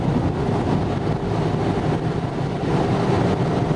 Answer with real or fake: real